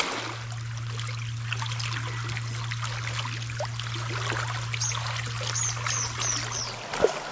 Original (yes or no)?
yes